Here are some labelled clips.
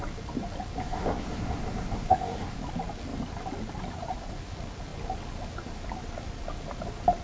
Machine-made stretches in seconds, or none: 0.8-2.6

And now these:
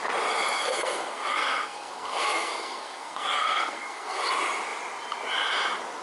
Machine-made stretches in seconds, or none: 0.6-4.2

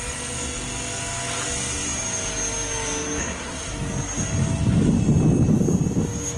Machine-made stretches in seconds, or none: 3.2-3.7